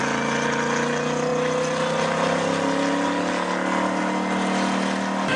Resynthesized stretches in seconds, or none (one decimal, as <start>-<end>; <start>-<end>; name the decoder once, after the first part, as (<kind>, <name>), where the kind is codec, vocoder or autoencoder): none